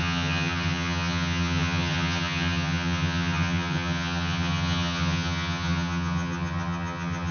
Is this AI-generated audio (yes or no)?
yes